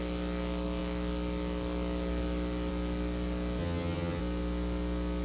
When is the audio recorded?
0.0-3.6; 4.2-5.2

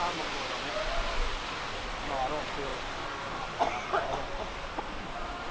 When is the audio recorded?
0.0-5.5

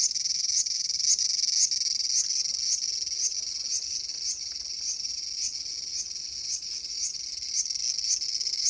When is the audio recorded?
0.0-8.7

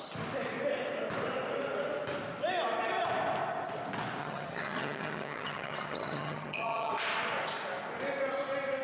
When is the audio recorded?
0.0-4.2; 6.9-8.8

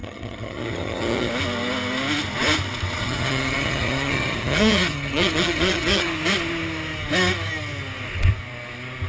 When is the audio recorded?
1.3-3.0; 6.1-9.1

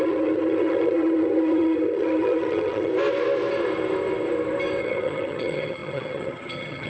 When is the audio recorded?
2.9-4.8

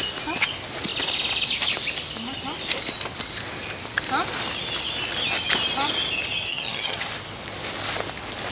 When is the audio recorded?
0.0-6.5; 7.1-8.5